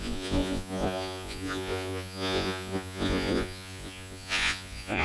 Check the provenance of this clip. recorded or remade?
remade